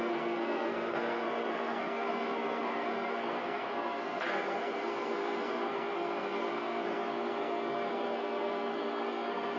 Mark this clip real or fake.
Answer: fake